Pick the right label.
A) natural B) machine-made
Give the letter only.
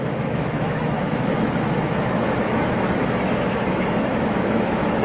B